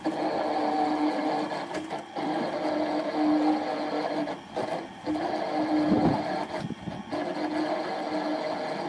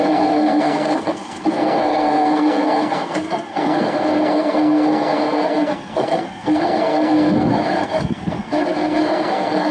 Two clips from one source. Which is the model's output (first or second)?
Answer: second